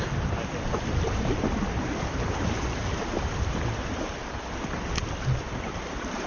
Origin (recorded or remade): recorded